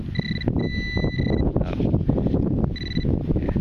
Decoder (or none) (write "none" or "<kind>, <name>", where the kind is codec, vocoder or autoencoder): none